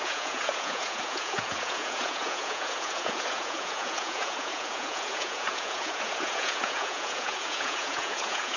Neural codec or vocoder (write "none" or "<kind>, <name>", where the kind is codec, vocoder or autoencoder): vocoder, Vocos